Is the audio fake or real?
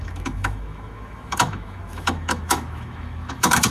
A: fake